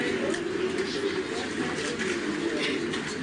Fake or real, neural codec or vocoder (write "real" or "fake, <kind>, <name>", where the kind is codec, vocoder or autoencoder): real